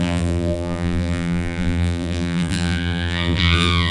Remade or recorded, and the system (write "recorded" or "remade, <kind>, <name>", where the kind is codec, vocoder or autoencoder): remade, vocoder, BigVGAN v2